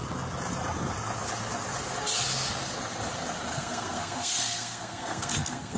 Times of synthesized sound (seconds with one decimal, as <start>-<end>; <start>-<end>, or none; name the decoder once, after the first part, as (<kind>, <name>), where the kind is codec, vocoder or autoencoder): 3.5-5.8 (codec, SNAC)